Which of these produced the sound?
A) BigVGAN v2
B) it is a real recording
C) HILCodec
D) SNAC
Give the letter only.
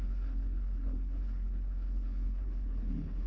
C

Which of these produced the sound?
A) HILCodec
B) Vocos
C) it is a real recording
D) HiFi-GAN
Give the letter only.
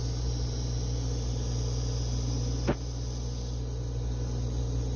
C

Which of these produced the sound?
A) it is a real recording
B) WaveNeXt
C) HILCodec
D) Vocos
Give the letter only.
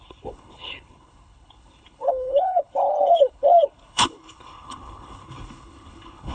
C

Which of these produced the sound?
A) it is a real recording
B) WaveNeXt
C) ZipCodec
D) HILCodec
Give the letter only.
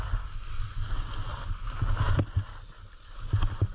A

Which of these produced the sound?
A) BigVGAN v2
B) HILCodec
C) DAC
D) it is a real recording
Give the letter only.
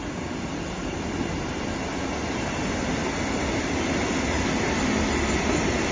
D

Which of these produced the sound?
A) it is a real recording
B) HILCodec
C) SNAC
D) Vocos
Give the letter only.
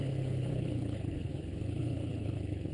B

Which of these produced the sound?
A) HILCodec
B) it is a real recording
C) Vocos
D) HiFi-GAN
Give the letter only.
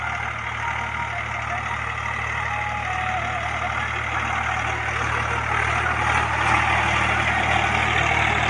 B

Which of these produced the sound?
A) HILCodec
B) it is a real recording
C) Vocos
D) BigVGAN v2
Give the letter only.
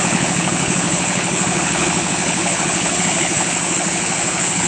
A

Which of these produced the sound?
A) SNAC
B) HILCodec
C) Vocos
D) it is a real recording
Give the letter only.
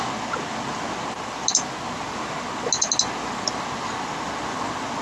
D